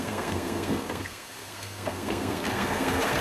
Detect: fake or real fake